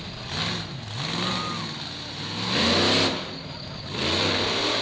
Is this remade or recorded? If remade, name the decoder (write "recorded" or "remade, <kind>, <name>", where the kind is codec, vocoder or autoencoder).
recorded